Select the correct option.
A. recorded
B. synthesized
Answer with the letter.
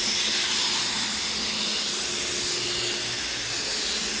A